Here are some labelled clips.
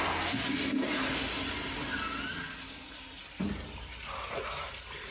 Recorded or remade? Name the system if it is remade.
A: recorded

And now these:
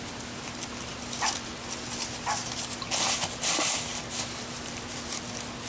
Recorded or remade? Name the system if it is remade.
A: recorded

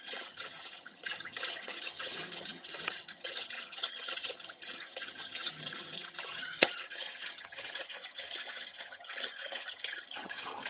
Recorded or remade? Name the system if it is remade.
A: remade, vocoder, HiFi-GAN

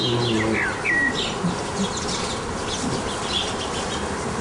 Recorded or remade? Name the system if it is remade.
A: recorded